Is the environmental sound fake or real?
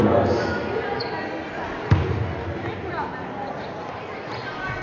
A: real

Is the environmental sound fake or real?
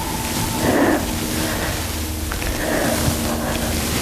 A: real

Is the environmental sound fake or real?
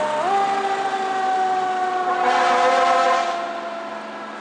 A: real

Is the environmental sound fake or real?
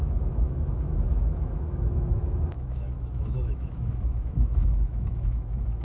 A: fake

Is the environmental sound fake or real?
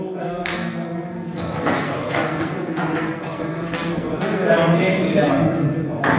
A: fake